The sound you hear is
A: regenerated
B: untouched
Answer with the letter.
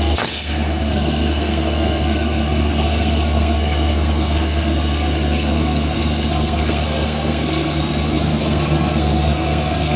A